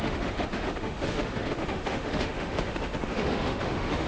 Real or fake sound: fake